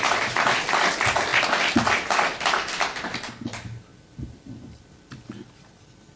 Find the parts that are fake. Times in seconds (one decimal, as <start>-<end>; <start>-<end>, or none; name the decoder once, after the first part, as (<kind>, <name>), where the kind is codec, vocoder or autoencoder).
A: none